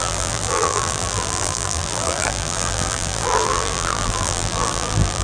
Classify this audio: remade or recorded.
remade